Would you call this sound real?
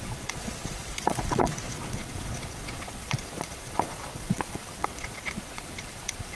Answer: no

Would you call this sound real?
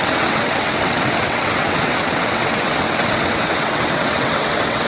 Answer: no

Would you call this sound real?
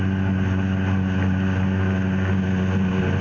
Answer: yes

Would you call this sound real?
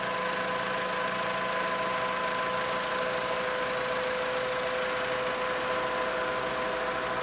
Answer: yes